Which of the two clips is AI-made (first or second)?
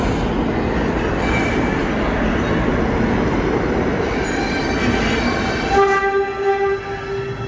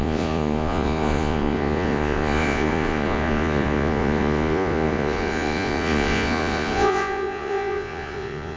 second